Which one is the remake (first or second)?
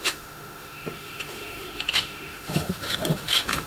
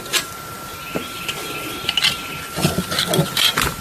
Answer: first